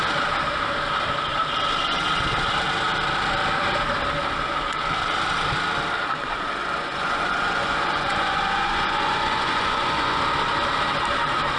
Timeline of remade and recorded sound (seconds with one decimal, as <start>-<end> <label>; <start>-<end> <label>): 0.0-6.6 recorded; 6.6-10.2 remade; 10.2-11.6 recorded